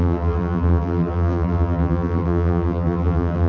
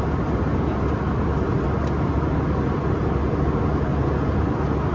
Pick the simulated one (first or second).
first